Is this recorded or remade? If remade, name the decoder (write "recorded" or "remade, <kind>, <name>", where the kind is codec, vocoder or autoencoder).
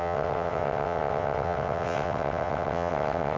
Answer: remade, vocoder, WaveNeXt